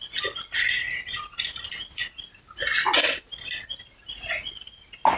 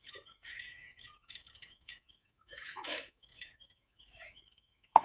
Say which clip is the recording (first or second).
first